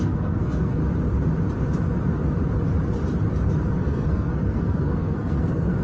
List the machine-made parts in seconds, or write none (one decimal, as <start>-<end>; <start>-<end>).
0.0-0.8; 3.8-5.8